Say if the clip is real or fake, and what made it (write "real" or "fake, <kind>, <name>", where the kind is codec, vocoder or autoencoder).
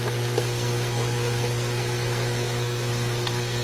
fake, codec, SNAC